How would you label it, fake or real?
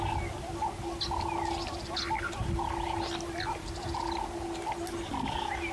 real